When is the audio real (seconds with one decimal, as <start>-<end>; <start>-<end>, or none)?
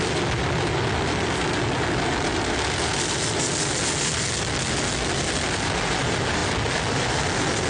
0.0-7.7